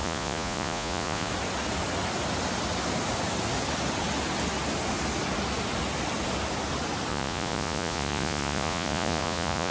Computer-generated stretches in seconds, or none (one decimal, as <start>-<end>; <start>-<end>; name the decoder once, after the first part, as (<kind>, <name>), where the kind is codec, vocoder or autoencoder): 0.0-1.3 (vocoder, Vocos); 7.1-9.7